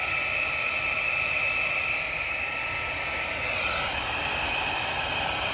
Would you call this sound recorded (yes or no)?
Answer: no